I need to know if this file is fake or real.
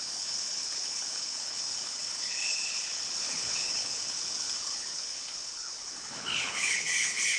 fake